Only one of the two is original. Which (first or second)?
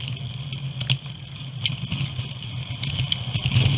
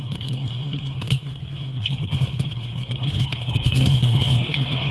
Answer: first